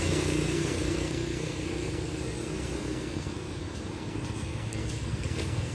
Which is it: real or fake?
fake